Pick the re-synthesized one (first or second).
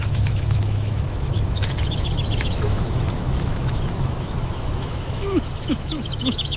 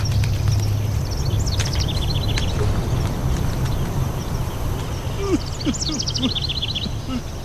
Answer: first